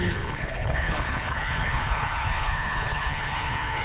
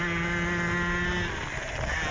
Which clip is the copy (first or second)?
first